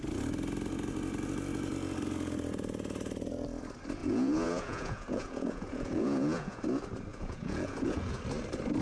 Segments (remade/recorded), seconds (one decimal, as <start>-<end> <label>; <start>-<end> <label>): 0.0-4.0 recorded; 4.0-6.6 remade; 6.6-7.1 recorded; 7.1-8.2 remade; 8.2-8.8 recorded